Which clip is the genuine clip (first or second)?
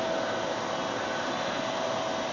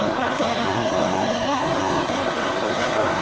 first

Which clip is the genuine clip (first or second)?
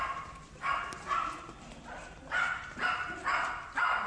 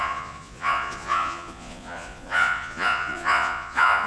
first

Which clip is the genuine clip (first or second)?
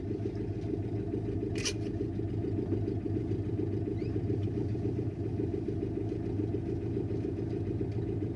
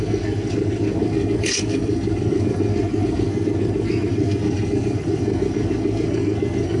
first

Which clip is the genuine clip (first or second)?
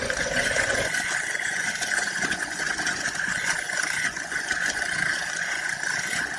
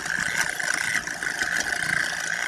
second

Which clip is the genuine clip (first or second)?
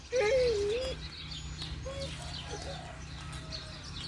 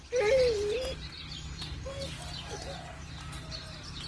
first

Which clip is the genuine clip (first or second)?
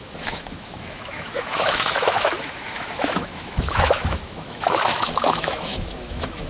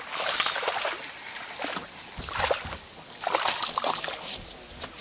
second